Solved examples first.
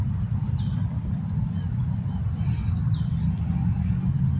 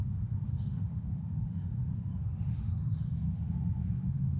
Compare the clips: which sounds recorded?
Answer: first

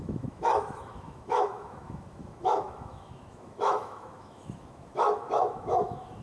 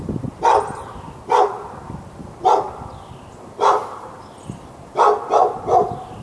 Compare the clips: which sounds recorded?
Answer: second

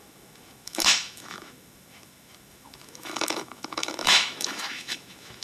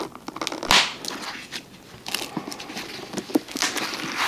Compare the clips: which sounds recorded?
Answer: second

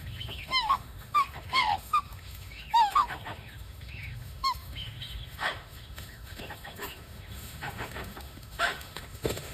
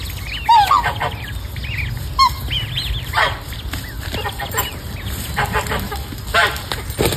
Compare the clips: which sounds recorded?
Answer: second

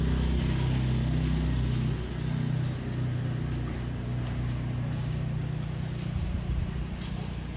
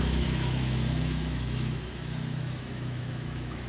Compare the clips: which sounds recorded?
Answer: first